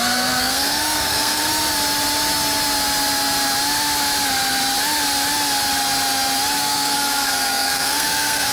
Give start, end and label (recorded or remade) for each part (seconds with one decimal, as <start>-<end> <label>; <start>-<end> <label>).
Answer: 0.0-1.5 remade; 1.5-6.6 recorded; 6.6-8.5 remade